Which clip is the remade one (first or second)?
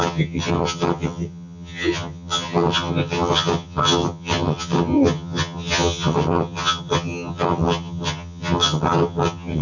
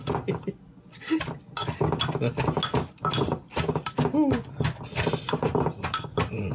first